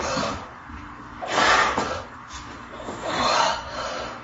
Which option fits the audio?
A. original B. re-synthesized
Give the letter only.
B